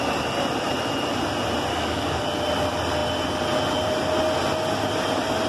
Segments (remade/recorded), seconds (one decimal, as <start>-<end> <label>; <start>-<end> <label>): 0.0-1.7 recorded; 1.7-2.2 remade; 2.2-5.5 recorded